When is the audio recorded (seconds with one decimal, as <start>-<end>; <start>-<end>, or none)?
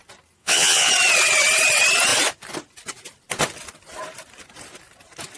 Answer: 0.0-0.4; 0.9-5.4